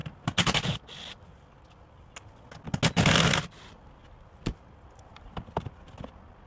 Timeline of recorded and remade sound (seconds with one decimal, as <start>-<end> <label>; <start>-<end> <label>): 0.0-6.5 recorded

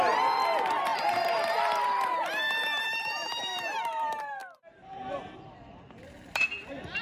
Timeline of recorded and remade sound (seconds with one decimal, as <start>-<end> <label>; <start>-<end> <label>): 0.0-7.0 remade

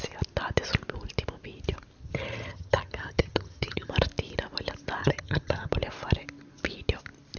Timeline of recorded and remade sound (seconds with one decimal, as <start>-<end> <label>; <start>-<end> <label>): 0.0-2.0 recorded; 2.0-3.9 remade; 3.9-5.0 recorded; 5.0-5.7 remade; 5.7-7.4 recorded

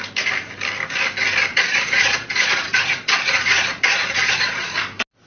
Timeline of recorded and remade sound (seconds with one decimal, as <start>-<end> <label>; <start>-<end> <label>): 0.0-1.5 recorded; 1.5-4.7 remade; 4.7-5.3 recorded

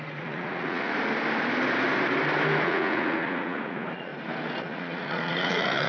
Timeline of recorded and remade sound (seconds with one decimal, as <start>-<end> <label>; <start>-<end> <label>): 0.0-0.9 remade; 0.9-2.6 recorded; 2.6-4.1 remade; 4.1-4.6 recorded; 4.6-5.9 remade

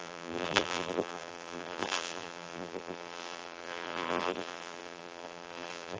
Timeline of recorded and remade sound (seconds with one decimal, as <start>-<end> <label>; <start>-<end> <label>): 0.0-6.0 remade

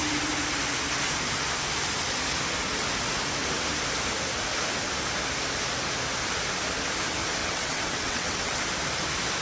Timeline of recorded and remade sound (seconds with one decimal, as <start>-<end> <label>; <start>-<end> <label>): 0.0-7.4 recorded; 7.4-8.6 remade; 8.6-9.4 recorded

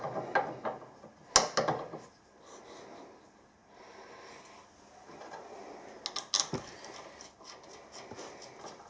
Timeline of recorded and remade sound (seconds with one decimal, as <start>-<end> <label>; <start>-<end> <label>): 0.0-8.9 recorded